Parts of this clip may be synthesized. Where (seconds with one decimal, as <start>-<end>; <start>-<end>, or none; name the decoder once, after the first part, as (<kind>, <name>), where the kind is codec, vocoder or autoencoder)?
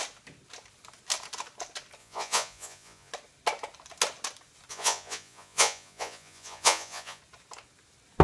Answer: 2.0-3.1 (vocoder, Vocos); 4.7-7.2